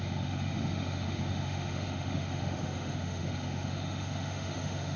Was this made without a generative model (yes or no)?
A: no